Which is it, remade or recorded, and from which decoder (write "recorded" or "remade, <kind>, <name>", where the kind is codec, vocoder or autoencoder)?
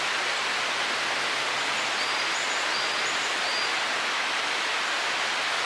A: recorded